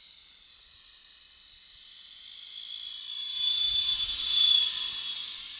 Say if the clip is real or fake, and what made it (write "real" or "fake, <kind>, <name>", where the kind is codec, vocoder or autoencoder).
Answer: real